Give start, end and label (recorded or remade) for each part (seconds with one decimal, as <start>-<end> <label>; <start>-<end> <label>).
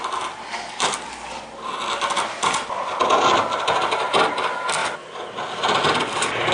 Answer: 0.0-6.5 recorded